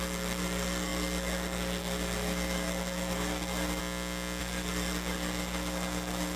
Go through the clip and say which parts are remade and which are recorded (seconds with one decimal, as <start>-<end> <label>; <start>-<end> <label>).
0.0-3.8 remade; 3.8-4.4 recorded; 4.4-6.4 remade